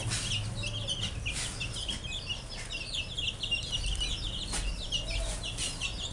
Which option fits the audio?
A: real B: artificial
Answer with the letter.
A